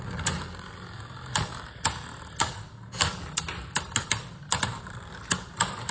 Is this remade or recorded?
remade